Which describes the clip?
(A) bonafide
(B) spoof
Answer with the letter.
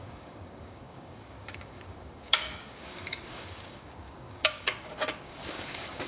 B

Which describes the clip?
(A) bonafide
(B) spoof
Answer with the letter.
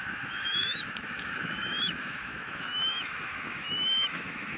B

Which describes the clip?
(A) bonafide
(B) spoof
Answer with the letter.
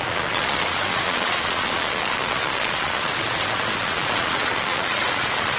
B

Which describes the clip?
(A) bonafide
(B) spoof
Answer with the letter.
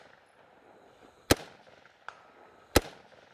A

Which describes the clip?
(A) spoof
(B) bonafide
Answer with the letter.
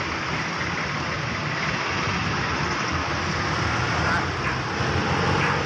B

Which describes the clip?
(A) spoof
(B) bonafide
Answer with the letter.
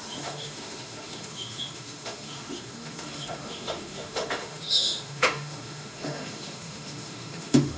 A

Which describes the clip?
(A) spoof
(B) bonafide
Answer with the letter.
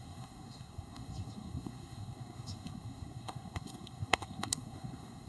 A